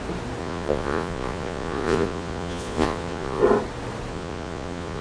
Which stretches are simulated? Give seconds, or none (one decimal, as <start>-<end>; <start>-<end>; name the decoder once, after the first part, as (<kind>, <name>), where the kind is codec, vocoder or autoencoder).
0.4-3.4 (vocoder, Vocos); 4.1-5.0